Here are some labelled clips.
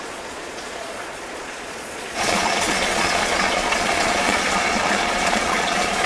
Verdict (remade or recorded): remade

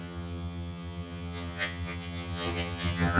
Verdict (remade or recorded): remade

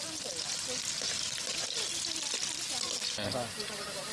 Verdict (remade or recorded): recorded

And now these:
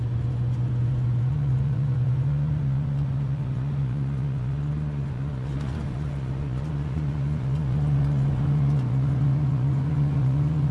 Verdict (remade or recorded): remade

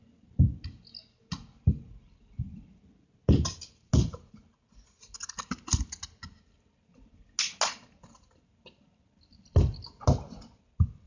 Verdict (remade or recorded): recorded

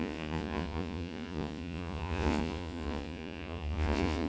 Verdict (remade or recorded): remade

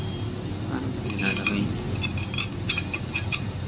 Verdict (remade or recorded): recorded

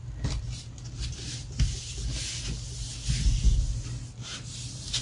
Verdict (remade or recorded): recorded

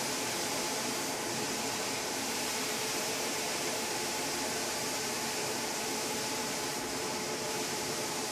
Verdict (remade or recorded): remade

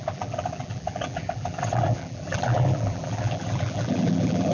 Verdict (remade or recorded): remade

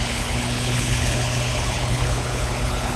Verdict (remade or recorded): remade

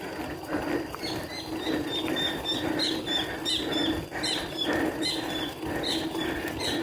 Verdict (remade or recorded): recorded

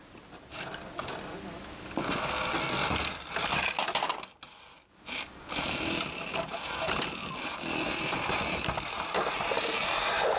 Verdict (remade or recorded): recorded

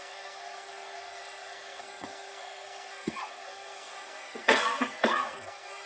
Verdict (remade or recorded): remade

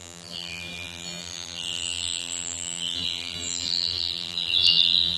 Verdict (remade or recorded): remade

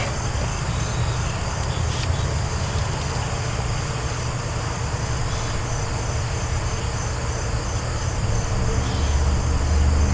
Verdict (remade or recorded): recorded